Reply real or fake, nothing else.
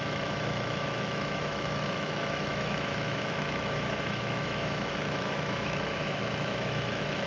fake